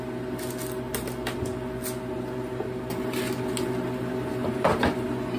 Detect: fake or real real